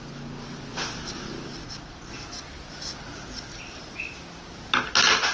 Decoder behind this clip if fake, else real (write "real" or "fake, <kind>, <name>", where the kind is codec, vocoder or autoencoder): real